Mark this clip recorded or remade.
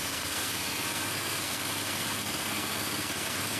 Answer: remade